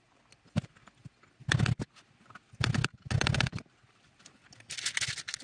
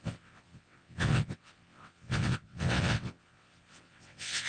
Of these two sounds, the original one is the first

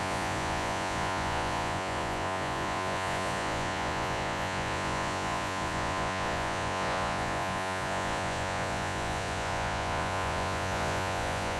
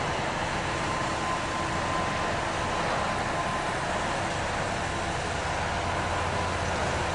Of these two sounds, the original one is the second